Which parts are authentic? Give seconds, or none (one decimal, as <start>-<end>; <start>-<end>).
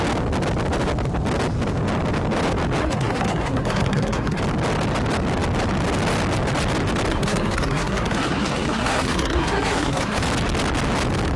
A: 0.0-2.8; 4.4-7.1; 10.2-11.4